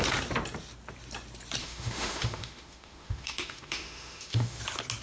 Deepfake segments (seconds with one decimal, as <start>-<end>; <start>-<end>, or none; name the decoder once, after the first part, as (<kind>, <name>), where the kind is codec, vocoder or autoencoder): 1.6-4.6 (autoencoder, DAC-VAE)